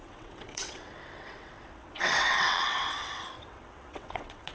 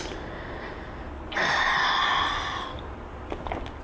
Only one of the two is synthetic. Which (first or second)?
first